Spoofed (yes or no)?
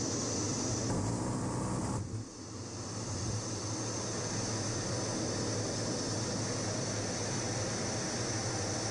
no